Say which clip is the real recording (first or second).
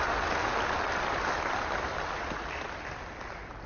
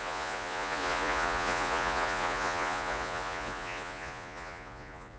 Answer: first